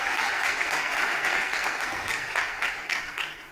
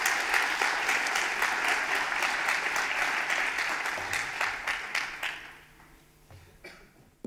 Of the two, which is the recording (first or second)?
second